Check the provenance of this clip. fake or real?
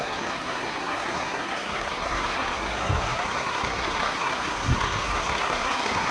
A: fake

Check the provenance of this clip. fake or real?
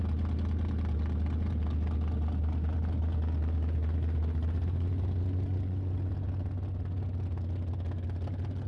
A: real